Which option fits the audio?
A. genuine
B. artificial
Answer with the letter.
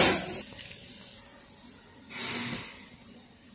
A